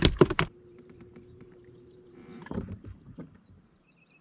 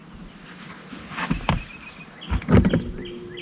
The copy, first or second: first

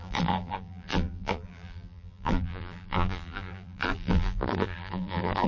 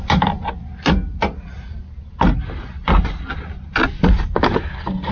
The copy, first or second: first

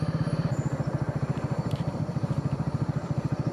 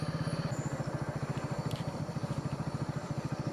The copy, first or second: first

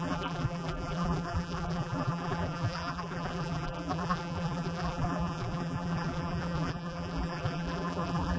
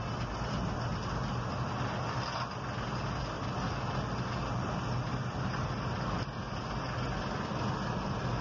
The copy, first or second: first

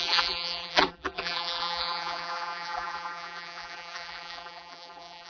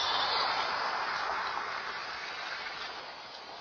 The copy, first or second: first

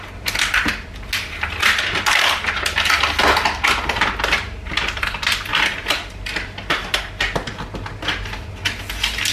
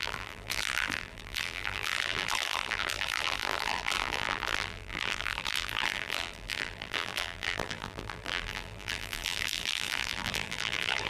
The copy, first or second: second